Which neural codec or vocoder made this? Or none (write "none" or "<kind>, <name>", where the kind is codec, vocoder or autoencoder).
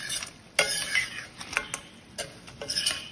none